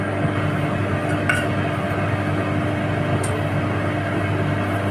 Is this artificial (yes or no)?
no